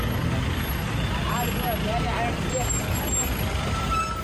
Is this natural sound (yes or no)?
yes